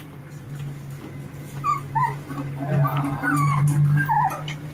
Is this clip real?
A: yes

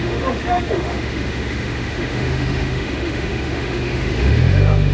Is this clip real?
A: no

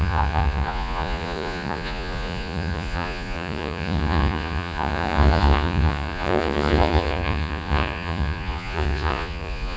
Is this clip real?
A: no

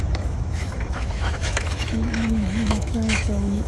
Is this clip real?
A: no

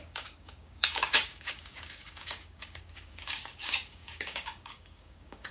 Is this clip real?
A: no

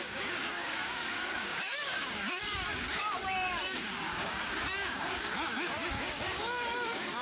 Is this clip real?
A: no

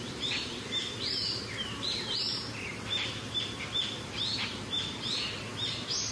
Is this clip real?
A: no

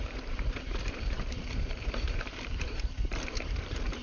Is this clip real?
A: no